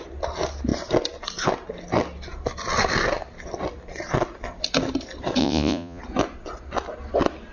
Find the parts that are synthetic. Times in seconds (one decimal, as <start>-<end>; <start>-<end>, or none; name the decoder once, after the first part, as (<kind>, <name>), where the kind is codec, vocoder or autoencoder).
5.4-6.0 (vocoder, Vocos)